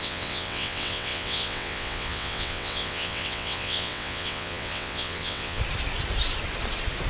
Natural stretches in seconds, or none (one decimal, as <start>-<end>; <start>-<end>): 5.6-7.1